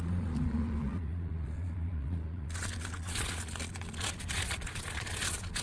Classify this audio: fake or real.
fake